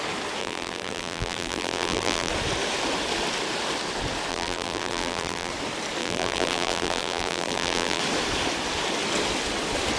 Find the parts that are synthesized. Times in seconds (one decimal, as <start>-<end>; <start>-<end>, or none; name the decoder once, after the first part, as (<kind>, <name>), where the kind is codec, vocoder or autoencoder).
0.4-2.3 (vocoder, BigVGAN v2); 4.3-5.5; 6.0-8.0